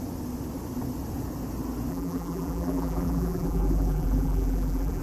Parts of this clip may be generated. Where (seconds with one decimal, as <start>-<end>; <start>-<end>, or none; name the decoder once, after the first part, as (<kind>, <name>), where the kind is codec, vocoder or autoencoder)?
1.9-5.0 (vocoder, BigVGAN v2)